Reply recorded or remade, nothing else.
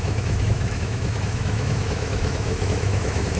remade